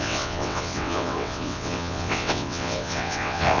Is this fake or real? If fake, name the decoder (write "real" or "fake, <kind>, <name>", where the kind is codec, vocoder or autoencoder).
fake, vocoder, WaveNeXt